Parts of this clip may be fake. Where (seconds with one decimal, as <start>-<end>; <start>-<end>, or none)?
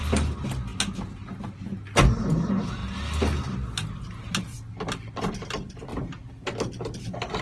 none